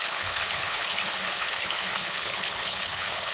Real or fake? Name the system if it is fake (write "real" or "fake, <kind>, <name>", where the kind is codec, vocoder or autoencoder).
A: fake, codec, HILCodec